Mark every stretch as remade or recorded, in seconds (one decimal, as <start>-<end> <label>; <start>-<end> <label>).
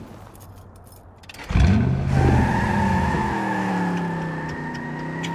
0.0-2.9 recorded; 2.9-3.7 remade; 3.7-5.3 recorded